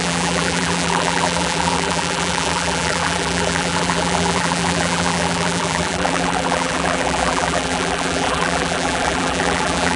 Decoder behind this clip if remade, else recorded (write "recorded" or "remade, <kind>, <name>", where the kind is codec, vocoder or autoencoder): remade, vocoder, BigVGAN v2